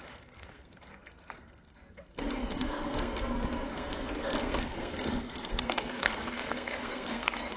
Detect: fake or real fake